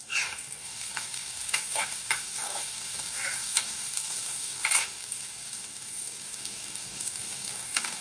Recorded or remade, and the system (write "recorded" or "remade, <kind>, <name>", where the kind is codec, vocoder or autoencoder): remade, codec, DAC